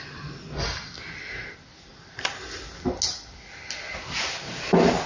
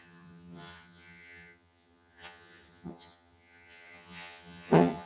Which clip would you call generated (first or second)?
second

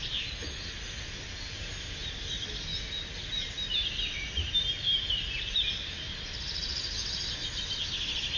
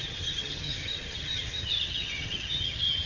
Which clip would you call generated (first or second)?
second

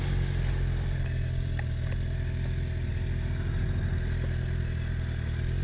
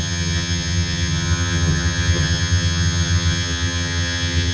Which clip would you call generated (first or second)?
second